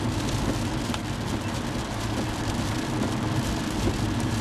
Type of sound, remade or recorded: recorded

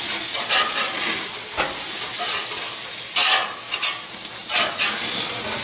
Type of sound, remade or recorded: recorded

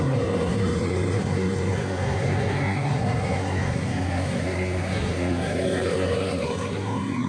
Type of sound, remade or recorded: remade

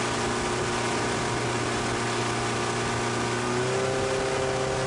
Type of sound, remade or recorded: recorded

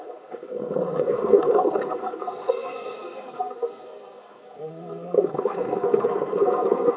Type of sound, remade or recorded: remade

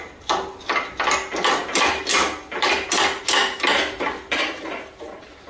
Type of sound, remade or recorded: recorded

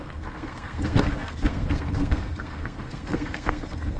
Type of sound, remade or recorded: remade